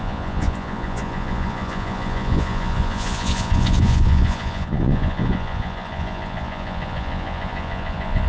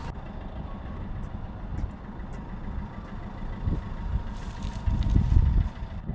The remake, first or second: first